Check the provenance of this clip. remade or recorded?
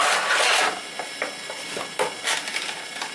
recorded